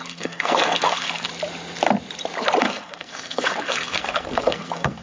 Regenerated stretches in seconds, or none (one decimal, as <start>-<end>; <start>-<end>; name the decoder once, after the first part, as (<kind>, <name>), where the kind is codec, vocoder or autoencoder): 0.0-1.3 (codec, SNAC); 2.6-5.0